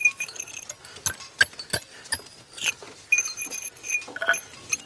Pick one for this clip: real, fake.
real